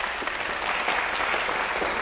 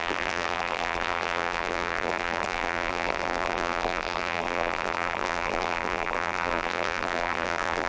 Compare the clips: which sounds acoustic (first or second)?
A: first